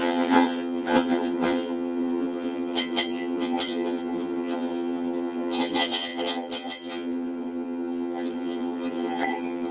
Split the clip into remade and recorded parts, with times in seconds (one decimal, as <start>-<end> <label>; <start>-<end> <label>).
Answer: 0.0-9.7 remade